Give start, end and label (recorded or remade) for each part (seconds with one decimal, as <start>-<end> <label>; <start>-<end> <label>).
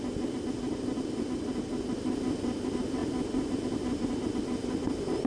0.0-5.3 recorded